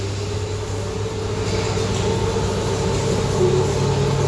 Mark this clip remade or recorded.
recorded